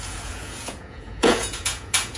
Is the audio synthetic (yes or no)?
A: yes